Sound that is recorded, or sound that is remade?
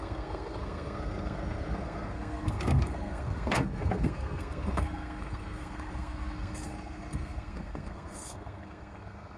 remade